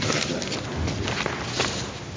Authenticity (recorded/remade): recorded